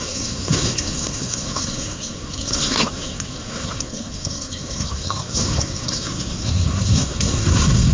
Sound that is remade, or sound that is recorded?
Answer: remade